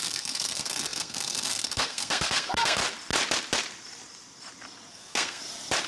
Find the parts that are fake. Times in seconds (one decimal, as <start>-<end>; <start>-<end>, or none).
0.0-2.8; 4.9-5.4